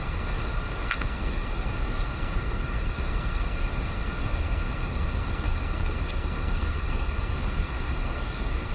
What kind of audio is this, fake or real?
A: fake